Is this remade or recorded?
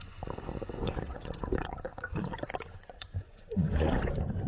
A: remade